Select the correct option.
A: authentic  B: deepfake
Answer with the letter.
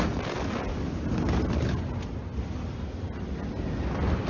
A